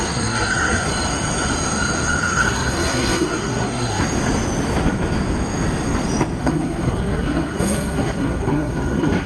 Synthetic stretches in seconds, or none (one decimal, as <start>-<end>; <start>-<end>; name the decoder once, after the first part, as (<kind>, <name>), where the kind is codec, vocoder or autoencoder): 0.0-0.9 (codec, SNAC); 2.2-4.0; 6.4-9.3